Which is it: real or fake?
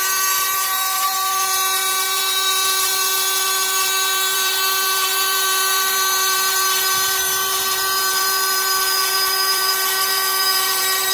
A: fake